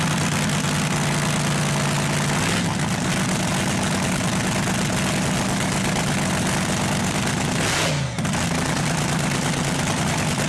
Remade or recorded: recorded